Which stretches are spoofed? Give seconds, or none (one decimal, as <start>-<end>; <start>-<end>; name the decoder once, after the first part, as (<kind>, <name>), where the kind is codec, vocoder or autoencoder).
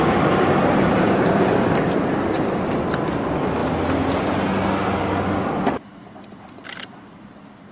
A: 0.0-3.6 (vocoder, BigVGAN v2); 5.6-7.7